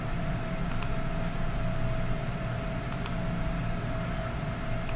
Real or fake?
real